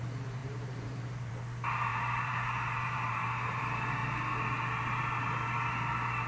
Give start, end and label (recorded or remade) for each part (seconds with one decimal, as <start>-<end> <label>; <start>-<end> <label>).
0.0-0.4 recorded; 0.4-1.3 remade; 1.3-1.9 recorded; 1.9-3.6 remade; 3.6-6.3 recorded